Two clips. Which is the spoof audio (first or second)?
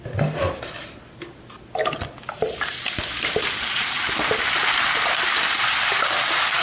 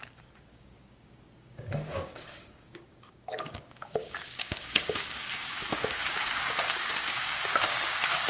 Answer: second